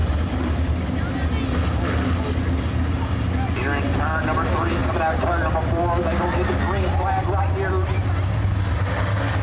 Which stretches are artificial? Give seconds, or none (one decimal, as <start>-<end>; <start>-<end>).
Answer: 0.0-0.9; 4.8-7.4